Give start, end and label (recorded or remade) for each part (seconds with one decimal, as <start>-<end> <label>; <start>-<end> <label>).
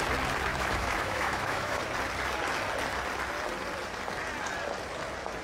0.0-0.5 recorded; 0.5-1.8 remade; 1.8-5.4 recorded